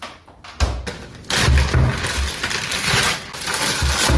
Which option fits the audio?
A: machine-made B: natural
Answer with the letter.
B